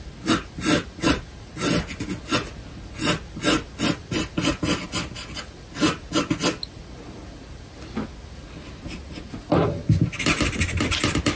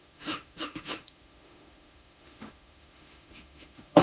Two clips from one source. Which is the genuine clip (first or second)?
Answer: first